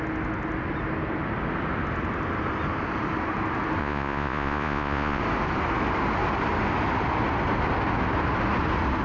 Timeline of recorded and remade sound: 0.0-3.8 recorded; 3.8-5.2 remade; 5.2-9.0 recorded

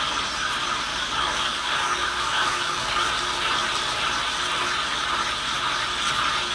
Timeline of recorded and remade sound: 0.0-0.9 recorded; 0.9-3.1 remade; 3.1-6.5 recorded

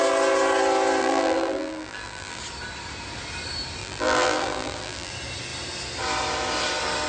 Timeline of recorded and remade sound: 0.0-1.0 recorded; 1.0-2.4 remade; 2.4-3.8 recorded; 3.8-5.1 remade; 5.1-7.1 recorded